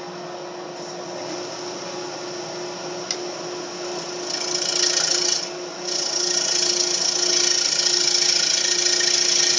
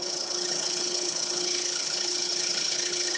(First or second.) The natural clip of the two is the first